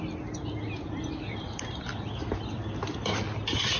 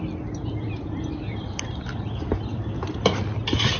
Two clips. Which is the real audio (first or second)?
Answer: first